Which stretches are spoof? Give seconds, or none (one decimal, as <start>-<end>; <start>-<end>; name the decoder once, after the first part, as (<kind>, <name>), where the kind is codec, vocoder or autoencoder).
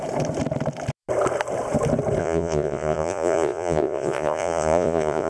2.2-5.3 (vocoder, Vocos)